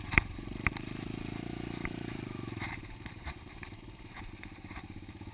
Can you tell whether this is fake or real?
fake